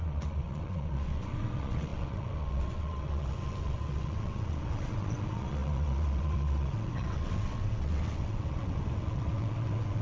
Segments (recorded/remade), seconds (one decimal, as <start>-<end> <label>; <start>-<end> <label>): 0.0-10.0 remade